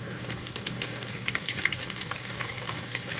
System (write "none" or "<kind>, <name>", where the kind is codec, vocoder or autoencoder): codec, DAC